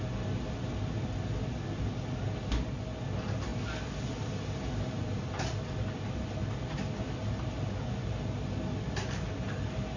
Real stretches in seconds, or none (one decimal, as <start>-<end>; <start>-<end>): 0.0-10.0